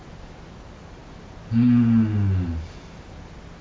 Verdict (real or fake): real